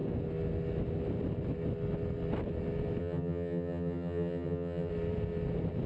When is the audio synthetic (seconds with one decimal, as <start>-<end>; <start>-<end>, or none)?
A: 3.0-4.9